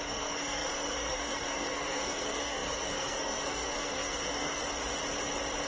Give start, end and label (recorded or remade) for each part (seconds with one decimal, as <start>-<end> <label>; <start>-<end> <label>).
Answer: 0.0-4.6 remade; 4.6-5.7 recorded